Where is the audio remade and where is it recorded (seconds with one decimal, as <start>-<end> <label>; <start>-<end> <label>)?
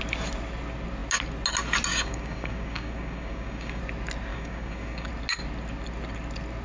0.0-1.9 recorded; 1.9-3.8 remade; 3.8-4.3 recorded; 4.3-5.1 remade; 5.1-6.6 recorded